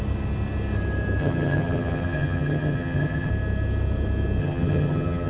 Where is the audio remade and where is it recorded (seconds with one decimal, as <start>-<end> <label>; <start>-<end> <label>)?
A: 0.0-1.2 recorded; 1.2-3.3 remade; 3.3-4.4 recorded; 4.4-5.3 remade